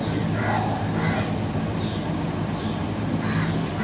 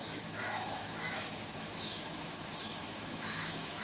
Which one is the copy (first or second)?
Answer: second